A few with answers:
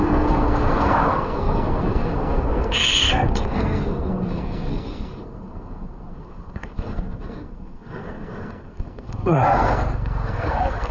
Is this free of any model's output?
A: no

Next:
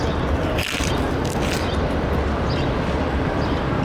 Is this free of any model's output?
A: yes